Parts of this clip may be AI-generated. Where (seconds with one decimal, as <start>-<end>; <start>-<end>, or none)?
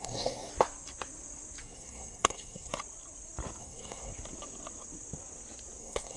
0.0-0.5; 1.6-2.7; 3.6-4.1; 5.8-6.2